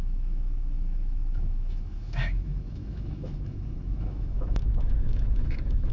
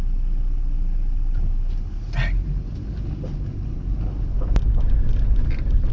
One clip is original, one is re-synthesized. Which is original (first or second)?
second